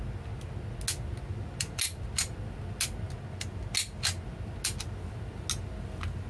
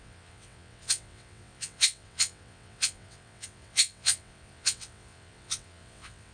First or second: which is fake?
second